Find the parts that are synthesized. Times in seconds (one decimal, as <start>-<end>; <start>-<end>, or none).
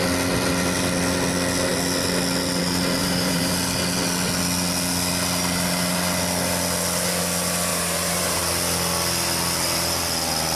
3.0-3.5; 7.7-8.4